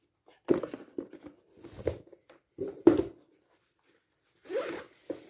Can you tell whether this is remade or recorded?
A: remade